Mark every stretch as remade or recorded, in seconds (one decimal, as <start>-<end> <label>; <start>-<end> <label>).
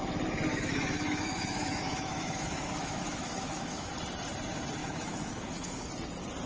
0.0-0.5 recorded; 0.5-3.9 remade; 3.9-4.8 recorded; 4.8-5.9 remade; 5.9-6.5 recorded